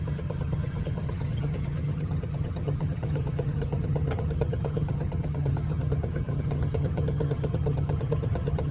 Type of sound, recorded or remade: remade